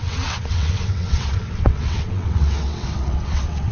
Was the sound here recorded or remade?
remade